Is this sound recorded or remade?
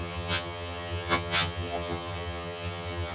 remade